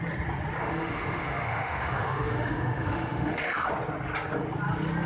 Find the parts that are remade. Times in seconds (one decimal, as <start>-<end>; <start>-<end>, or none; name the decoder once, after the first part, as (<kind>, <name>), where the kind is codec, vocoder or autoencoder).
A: 0.6-3.7 (autoencoder, DAC-VAE)